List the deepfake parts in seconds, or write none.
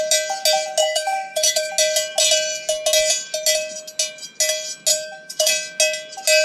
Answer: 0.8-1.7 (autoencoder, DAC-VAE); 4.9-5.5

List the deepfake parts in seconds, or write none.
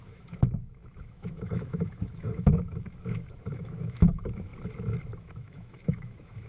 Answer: 0.0-4.5 (autoencoder, DAC-VAE); 5.2-6.5